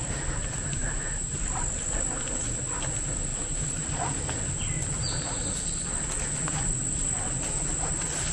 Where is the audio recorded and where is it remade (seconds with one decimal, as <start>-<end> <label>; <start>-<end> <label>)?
0.0-0.4 recorded; 0.4-1.3 remade; 1.3-8.3 recorded